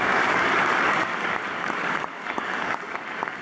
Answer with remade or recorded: remade